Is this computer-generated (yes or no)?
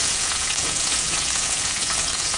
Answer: yes